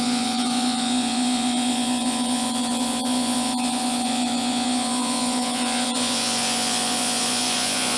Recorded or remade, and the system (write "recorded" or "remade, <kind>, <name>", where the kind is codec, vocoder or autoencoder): remade, vocoder, Vocos